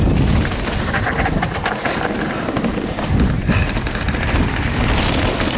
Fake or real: real